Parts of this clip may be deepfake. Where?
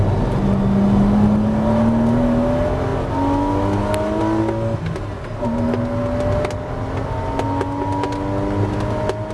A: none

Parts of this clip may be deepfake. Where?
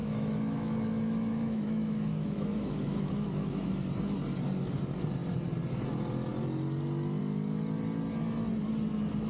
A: 0.0-3.7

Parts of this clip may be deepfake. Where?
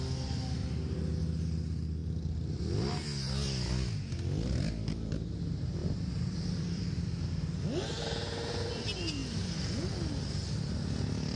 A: 2.0-2.9; 5.8-7.3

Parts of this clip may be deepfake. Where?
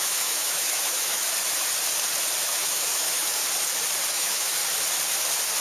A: 0.0-1.2; 2.4-3.4; 4.1-4.6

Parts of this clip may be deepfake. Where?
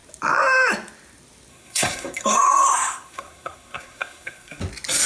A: 1.5-4.6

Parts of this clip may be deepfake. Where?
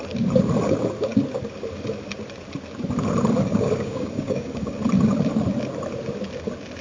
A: 3.5-4.8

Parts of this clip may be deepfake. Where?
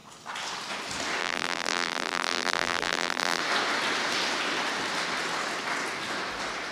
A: 1.2-3.4